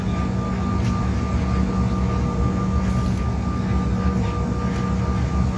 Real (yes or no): yes